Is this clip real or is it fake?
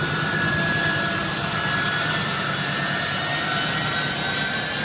real